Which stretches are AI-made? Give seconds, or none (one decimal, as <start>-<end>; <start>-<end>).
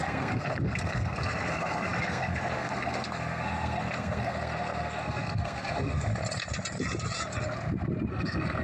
0.0-6.1; 8.1-8.6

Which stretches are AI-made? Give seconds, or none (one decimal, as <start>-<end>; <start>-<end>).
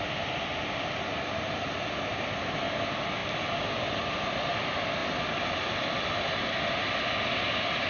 none